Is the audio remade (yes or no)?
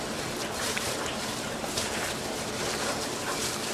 yes